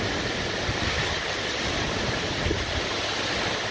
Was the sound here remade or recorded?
recorded